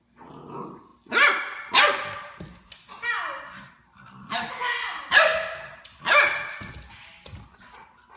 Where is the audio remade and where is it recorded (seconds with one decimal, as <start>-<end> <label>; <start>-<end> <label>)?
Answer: 0.0-8.2 recorded